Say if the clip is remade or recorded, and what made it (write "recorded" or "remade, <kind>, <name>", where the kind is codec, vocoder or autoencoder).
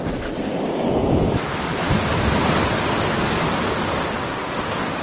recorded